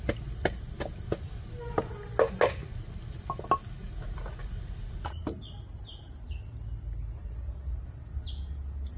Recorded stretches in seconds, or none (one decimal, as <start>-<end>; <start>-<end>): 0.0-9.0